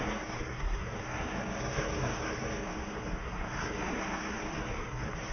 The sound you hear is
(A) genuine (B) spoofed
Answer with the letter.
B